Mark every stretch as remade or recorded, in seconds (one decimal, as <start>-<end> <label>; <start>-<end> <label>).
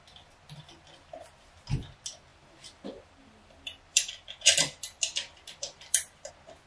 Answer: 0.0-2.3 recorded; 2.3-6.3 remade; 6.3-6.7 recorded